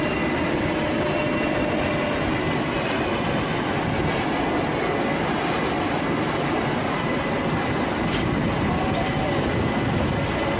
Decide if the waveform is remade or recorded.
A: recorded